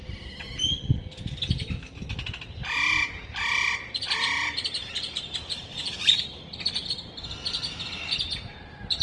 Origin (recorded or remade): recorded